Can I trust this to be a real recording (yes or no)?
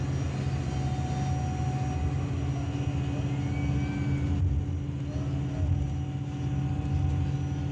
yes